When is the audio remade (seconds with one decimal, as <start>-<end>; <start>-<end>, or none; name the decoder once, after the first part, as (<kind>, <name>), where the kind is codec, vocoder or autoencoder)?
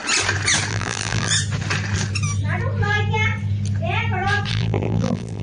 0.7-1.3 (vocoder, BigVGAN v2); 4.5-5.4